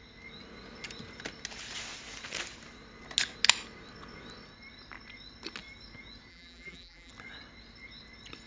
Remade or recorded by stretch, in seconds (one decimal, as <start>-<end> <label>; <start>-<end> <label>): 0.0-6.3 recorded; 6.3-7.1 remade; 7.1-8.5 recorded

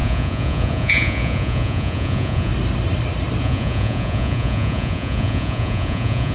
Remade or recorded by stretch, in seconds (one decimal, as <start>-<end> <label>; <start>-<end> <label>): 0.0-2.5 remade; 2.5-3.4 recorded; 3.4-6.3 remade

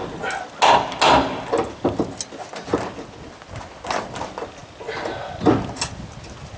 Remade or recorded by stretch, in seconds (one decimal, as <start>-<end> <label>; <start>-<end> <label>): 0.0-6.6 recorded

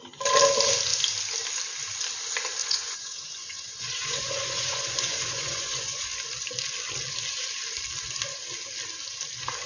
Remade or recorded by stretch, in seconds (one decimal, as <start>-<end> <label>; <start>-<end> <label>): 0.0-2.6 recorded; 2.6-6.0 remade; 6.0-9.7 recorded

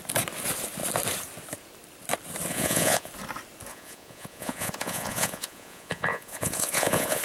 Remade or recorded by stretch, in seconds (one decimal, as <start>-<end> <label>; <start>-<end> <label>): 0.0-2.5 recorded; 2.5-3.1 remade; 3.1-3.7 recorded; 3.7-7.2 remade

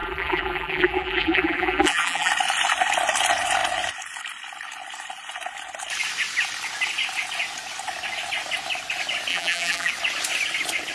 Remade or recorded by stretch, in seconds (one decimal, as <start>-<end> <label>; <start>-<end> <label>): 0.0-2.3 remade; 2.3-9.3 recorded; 9.3-9.9 remade; 9.9-10.9 recorded

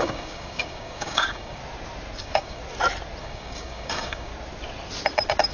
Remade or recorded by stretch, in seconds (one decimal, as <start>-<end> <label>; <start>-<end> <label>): 0.0-1.6 remade; 1.6-2.2 recorded; 2.2-2.6 remade; 2.6-3.2 recorded; 3.2-4.3 remade; 4.3-5.5 recorded